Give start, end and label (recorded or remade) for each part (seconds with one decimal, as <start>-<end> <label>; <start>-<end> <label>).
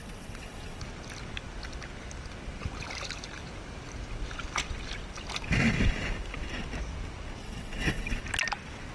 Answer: 0.0-0.8 remade; 0.8-7.4 recorded; 7.4-8.2 remade; 8.2-8.9 recorded